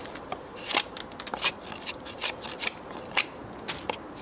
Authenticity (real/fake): real